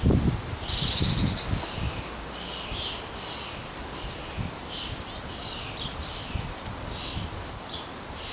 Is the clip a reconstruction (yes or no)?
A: no